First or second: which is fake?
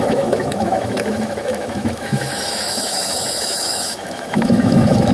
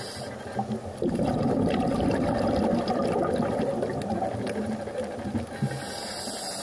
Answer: first